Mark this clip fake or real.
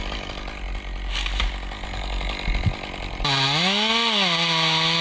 real